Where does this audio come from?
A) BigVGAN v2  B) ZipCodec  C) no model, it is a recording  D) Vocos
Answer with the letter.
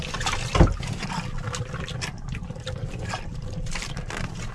C